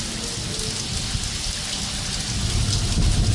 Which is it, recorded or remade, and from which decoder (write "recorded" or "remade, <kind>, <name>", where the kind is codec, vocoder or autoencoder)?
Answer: recorded